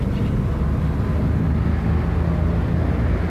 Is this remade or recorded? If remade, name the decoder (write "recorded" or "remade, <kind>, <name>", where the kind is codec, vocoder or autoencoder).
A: recorded